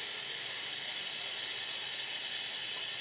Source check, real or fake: real